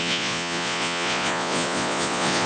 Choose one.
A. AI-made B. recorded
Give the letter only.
A